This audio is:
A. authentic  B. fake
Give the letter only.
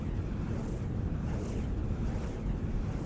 A